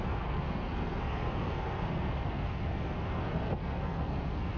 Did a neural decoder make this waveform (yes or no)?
yes